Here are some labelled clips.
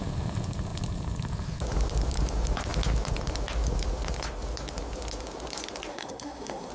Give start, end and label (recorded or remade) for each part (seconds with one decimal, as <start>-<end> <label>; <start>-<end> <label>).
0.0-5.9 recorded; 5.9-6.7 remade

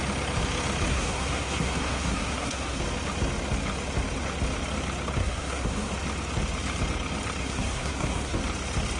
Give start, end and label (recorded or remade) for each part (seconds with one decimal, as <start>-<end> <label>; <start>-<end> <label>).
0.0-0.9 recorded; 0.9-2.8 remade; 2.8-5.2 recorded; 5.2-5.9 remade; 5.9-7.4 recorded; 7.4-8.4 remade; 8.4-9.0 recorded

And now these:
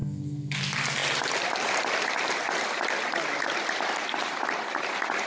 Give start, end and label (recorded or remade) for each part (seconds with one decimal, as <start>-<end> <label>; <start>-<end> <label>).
0.0-0.6 remade; 0.6-5.3 recorded

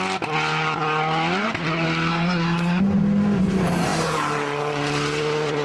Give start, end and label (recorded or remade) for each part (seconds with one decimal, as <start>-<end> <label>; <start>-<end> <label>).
0.0-2.1 recorded; 2.1-2.8 remade; 2.8-5.6 recorded

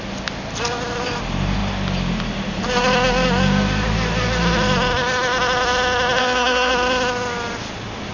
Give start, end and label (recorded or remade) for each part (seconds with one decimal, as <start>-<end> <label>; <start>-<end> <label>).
0.0-6.2 recorded; 6.2-6.7 remade; 6.7-8.1 recorded

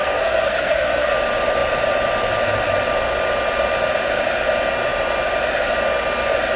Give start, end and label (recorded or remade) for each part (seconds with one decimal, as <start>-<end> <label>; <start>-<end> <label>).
0.0-1.1 remade; 1.1-6.6 recorded

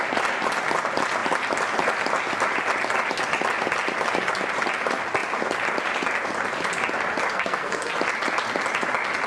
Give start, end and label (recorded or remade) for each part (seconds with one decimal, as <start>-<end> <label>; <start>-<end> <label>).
0.0-7.3 recorded; 7.3-7.9 remade; 7.9-9.3 recorded

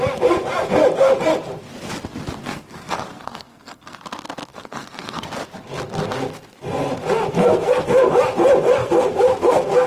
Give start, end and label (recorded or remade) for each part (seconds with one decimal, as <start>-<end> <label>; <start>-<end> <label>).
0.0-2.4 recorded; 2.4-4.0 remade; 4.0-4.5 recorded; 4.5-5.3 remade; 5.3-7.3 recorded; 7.3-8.1 remade; 8.1-8.8 recorded; 8.8-9.9 remade